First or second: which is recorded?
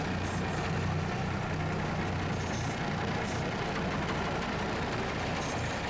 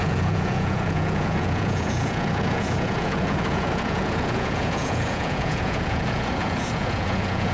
first